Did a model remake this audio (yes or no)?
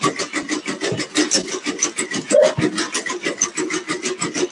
no